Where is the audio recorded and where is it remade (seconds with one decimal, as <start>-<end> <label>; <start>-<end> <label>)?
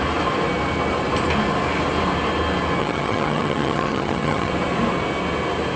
0.0-2.8 recorded; 2.8-4.5 remade; 4.5-5.8 recorded